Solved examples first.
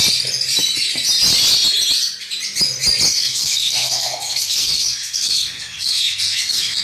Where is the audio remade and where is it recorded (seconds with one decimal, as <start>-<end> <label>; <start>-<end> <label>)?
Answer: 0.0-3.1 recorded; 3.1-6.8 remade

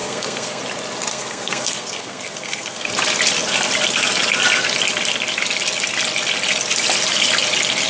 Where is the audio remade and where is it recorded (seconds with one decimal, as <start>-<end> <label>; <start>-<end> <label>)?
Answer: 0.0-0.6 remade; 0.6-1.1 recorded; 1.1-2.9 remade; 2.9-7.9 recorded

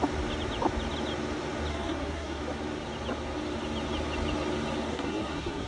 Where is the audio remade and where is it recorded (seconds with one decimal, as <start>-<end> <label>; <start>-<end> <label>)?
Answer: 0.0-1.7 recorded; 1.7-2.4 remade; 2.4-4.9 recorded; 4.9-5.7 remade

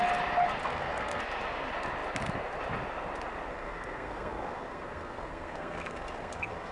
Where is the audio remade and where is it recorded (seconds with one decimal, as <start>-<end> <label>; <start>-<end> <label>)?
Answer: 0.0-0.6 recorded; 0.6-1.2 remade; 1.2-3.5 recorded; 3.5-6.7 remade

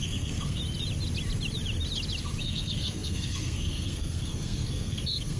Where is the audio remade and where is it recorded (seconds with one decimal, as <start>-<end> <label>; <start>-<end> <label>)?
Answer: 0.0-0.6 remade; 0.6-2.4 recorded; 2.4-5.4 remade

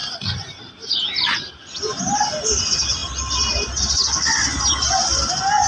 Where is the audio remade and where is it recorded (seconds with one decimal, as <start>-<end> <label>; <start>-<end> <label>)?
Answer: 0.0-5.7 recorded